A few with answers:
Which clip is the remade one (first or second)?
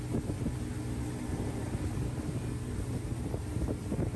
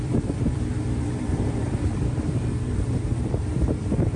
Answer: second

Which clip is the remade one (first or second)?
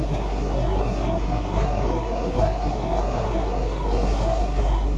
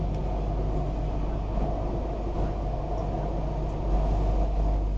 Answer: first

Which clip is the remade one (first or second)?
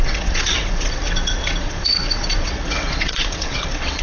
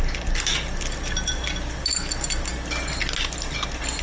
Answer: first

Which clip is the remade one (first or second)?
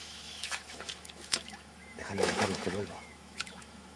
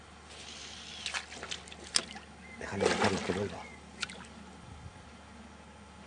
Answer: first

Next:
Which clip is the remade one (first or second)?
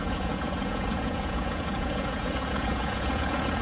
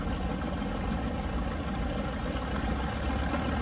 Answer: first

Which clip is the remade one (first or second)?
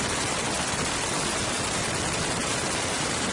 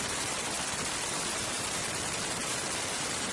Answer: second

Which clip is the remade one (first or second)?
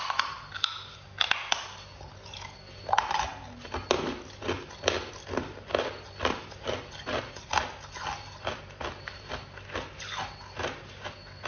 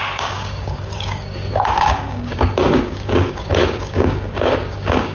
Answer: second